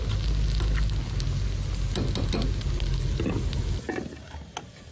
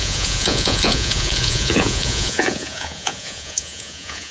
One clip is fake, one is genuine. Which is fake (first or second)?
second